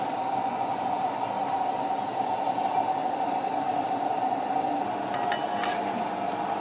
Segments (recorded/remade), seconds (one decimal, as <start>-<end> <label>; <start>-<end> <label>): 0.0-0.4 recorded; 0.4-1.0 remade; 1.0-6.6 recorded